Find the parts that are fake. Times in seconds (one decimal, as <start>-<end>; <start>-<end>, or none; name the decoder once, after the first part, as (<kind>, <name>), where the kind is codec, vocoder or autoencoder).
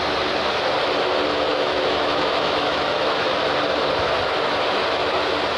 1.5-3.4 (autoencoder, DAC-VAE)